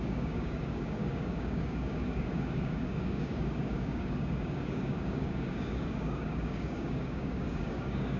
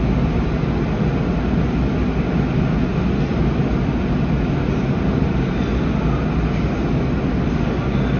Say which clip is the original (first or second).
second